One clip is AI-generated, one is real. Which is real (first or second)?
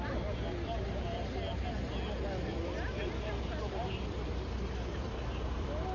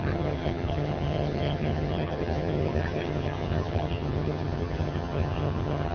first